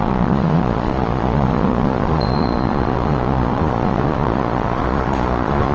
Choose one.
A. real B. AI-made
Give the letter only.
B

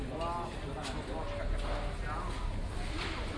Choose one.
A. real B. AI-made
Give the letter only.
A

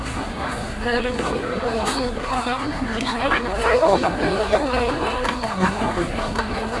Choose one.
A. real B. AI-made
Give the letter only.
B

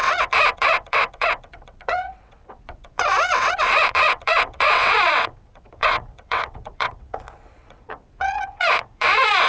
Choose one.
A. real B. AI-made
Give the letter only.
B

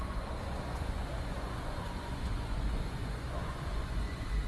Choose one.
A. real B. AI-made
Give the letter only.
B